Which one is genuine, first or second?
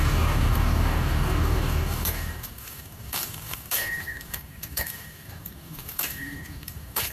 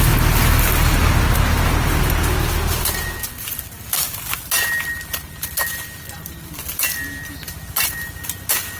second